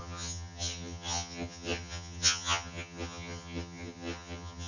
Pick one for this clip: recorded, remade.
remade